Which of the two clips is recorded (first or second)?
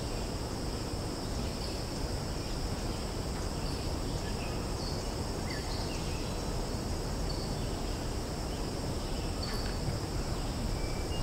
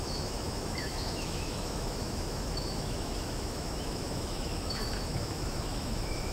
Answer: first